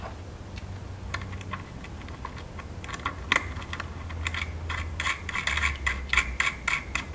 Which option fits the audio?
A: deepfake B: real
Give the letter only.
B